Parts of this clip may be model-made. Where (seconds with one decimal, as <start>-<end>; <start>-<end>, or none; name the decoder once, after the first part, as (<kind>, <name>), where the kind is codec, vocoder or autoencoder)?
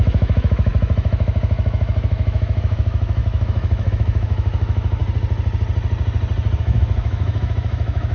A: 0.0-5.0 (autoencoder, DAC-VAE); 6.6-8.1